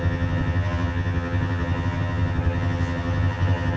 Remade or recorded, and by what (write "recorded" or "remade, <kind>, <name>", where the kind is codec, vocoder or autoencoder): remade, vocoder, HiFi-GAN